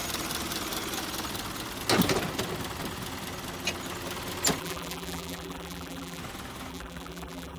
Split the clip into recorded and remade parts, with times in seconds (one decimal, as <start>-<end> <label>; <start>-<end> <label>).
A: 0.0-4.6 recorded; 4.6-6.2 remade; 6.2-6.7 recorded; 6.7-7.6 remade